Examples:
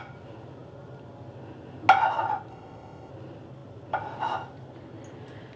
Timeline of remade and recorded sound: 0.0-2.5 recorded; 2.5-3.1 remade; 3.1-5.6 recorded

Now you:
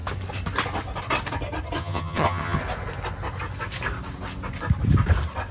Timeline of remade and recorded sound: 0.0-1.8 recorded; 1.8-2.6 remade; 2.6-5.5 recorded

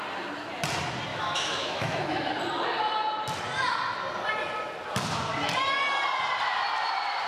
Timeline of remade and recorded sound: 0.0-1.1 recorded; 1.1-2.3 remade; 2.3-7.3 recorded